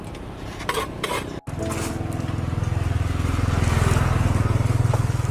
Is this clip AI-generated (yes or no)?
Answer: no